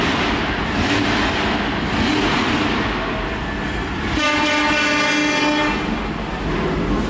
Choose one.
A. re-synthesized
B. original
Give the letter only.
B